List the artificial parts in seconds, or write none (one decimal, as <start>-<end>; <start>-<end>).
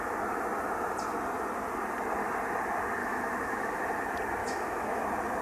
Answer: 3.0-3.8; 4.4-5.0